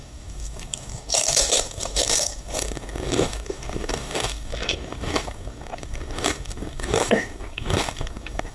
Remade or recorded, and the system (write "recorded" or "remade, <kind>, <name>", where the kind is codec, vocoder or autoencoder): remade, codec, DAC